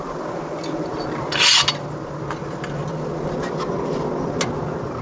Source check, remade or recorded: recorded